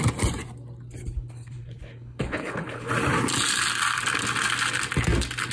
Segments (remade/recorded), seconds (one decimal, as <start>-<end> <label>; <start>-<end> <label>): 0.0-1.0 recorded; 1.0-2.9 remade; 2.9-5.5 recorded